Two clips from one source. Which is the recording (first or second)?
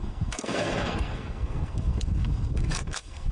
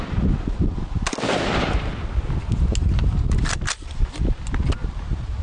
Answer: second